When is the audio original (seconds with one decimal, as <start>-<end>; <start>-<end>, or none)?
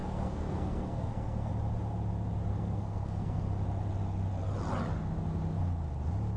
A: 1.5-2.5; 3.5-6.4